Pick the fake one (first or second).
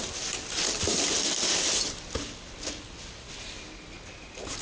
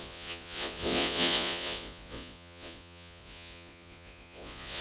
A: second